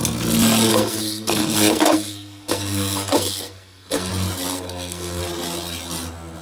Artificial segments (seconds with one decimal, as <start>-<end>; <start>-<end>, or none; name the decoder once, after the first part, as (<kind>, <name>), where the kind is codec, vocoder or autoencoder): 0.7-4.1 (codec, SNAC); 4.5-5.2